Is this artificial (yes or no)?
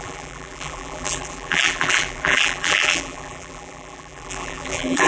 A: yes